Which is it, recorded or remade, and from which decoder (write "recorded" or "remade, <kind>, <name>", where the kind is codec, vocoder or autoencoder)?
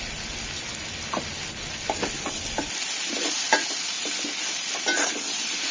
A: recorded